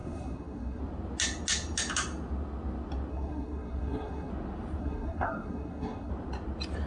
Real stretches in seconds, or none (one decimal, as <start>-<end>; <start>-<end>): 0.8-3.1; 4.3-4.8; 6.1-6.9